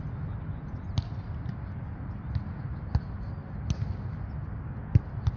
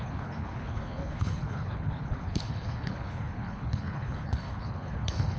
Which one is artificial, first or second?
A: second